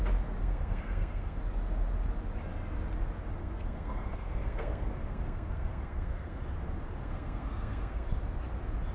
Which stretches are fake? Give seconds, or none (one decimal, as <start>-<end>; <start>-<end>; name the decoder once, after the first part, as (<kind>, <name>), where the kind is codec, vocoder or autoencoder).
0.4-1.4 (codec, SNAC); 3.4-6.4; 7.0-8.1